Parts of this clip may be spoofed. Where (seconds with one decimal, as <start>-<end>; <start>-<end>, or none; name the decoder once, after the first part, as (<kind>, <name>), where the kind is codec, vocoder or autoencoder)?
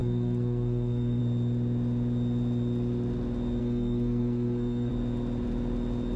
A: 0.0-1.2 (codec, SNAC); 3.6-4.9